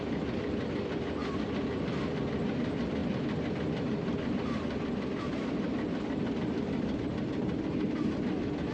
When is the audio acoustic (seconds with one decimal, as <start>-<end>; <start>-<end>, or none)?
0.0-8.7